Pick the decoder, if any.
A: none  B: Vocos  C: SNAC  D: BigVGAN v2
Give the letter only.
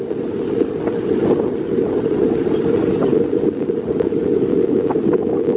A